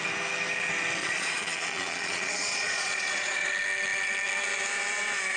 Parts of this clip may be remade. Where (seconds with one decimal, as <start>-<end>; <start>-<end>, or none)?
1.0-3.5